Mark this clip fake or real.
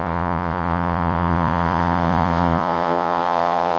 fake